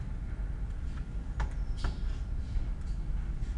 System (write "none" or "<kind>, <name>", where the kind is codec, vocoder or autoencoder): none